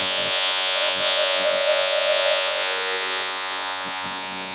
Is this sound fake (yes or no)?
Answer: yes